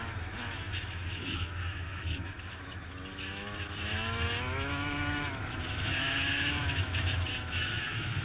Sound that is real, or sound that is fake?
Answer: fake